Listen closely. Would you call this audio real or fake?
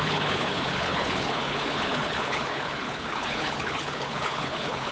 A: fake